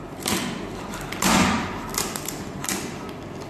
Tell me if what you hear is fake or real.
real